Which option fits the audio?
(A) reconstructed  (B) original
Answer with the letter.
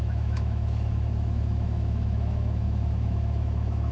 A